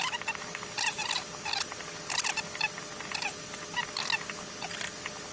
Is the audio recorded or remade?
recorded